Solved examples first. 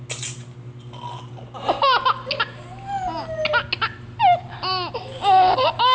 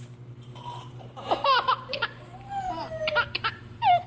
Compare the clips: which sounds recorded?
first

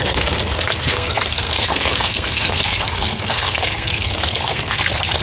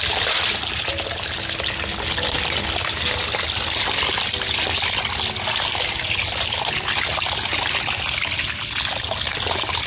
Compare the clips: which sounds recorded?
second